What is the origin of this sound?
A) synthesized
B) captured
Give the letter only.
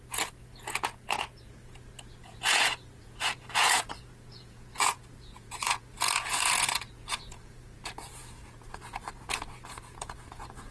A